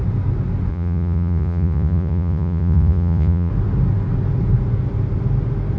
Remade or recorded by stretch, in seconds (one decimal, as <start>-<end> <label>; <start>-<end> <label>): 0.0-0.7 recorded; 0.7-3.5 remade; 3.5-5.8 recorded